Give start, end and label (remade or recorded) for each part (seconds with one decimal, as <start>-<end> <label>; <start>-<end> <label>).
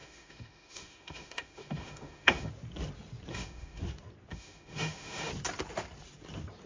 0.0-2.5 remade; 2.5-3.3 recorded; 3.3-3.8 remade; 3.8-4.3 recorded; 4.3-5.3 remade; 5.3-6.7 recorded